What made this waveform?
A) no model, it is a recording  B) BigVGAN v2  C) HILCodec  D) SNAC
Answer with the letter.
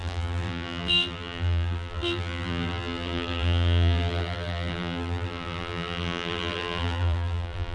B